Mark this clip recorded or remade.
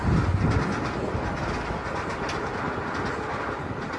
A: recorded